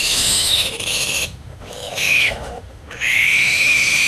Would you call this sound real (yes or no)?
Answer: no